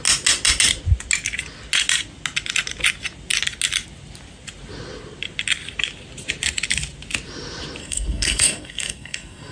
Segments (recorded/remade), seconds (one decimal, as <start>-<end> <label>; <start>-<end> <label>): 0.0-7.8 recorded; 7.8-9.5 remade